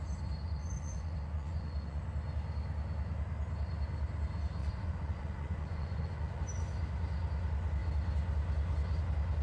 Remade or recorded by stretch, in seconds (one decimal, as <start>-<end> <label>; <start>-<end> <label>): 0.0-0.4 recorded; 0.4-2.0 remade; 2.0-4.6 recorded; 4.6-6.4 remade; 6.4-9.4 recorded